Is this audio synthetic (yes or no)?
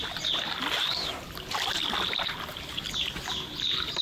no